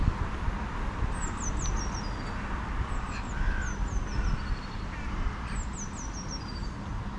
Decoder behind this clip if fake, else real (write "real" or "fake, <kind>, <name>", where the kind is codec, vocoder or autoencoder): real